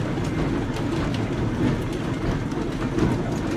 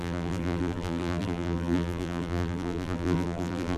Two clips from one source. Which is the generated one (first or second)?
second